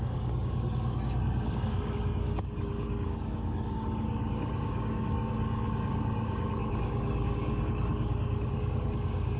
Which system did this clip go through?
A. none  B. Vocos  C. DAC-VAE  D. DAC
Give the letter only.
D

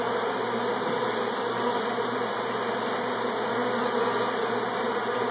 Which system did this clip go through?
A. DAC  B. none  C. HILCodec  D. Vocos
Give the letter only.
B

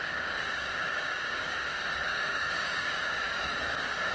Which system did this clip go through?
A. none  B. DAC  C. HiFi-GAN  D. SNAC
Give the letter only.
B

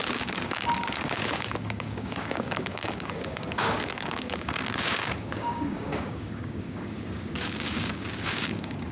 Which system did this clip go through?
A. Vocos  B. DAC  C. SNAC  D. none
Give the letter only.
B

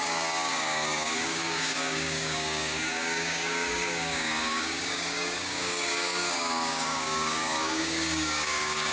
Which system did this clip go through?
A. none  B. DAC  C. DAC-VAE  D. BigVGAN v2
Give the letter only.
B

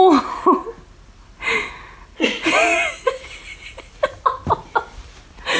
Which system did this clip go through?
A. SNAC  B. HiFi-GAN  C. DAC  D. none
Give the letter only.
D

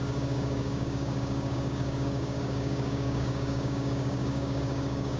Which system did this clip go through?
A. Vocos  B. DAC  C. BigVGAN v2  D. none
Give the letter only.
B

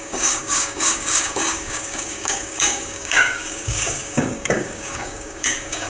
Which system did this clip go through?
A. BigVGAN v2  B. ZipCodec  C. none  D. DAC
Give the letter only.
D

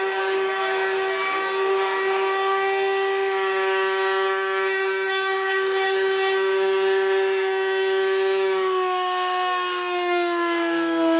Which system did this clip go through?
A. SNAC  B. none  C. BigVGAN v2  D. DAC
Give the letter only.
D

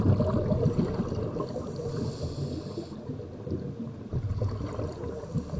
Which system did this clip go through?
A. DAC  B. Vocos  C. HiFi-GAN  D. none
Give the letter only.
D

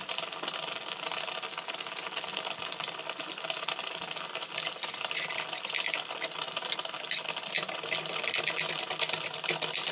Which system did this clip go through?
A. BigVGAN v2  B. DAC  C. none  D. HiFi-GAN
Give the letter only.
C